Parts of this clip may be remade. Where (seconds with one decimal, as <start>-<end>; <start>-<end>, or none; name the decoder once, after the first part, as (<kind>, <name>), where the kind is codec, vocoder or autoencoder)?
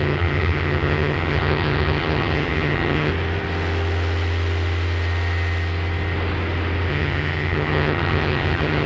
0.0-3.1 (vocoder, HiFi-GAN); 6.9-8.9